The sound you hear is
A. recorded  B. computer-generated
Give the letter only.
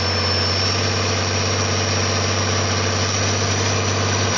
A